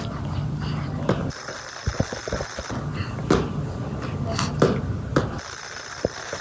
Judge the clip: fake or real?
real